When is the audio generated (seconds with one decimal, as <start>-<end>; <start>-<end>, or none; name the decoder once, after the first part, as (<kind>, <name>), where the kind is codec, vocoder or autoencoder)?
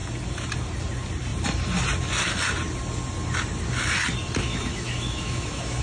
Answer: 4.5-5.8 (autoencoder, DAC-VAE)